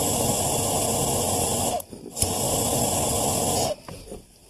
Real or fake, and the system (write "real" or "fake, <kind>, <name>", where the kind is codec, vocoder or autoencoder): real